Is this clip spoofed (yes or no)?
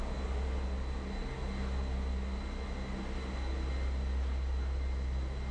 no